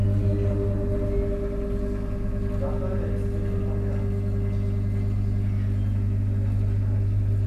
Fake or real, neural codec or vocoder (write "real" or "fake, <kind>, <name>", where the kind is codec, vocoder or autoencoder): real